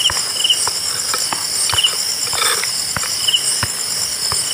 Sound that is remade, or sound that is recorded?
recorded